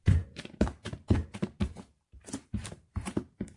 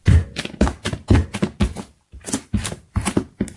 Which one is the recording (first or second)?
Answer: second